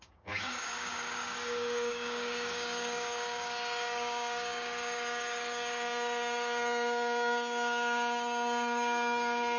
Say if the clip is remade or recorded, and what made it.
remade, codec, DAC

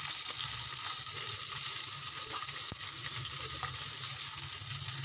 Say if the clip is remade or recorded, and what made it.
recorded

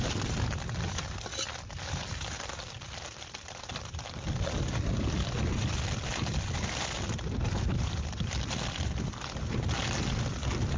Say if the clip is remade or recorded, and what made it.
recorded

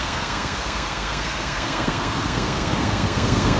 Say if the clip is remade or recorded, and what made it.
remade, codec, SNAC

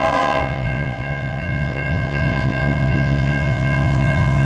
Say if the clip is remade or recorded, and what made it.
remade, vocoder, WaveNeXt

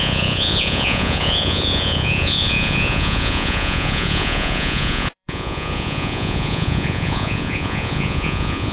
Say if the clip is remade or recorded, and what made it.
remade, vocoder, Vocos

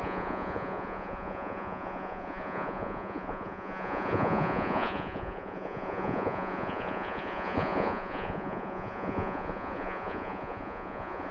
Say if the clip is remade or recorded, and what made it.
remade, vocoder, Vocos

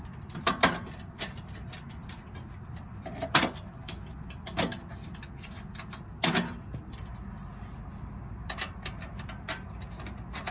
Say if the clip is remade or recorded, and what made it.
recorded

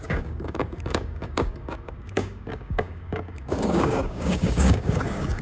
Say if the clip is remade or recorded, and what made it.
remade, codec, DAC